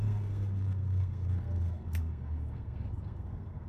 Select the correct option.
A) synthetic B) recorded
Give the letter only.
A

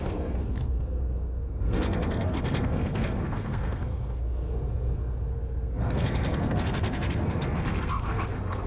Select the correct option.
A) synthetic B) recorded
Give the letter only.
A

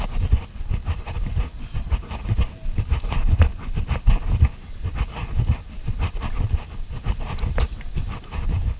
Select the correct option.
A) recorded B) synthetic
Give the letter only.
A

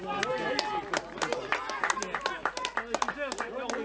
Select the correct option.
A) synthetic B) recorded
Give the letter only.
B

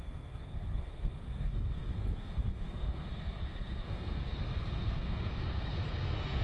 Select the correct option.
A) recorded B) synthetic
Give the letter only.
B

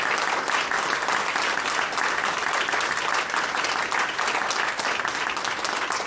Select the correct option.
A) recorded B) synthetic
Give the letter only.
A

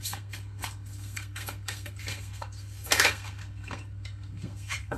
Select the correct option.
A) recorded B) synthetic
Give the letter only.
B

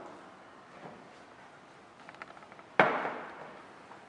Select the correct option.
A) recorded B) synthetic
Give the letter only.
A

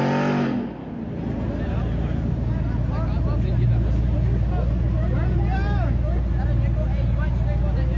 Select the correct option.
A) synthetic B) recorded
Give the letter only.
B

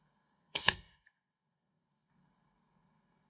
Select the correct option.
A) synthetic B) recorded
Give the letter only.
A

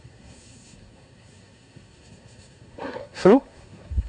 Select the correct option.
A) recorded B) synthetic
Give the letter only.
B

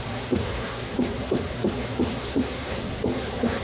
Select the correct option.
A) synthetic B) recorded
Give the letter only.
A